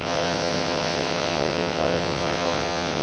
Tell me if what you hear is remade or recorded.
remade